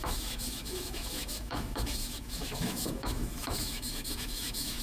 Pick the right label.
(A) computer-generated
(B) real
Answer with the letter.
A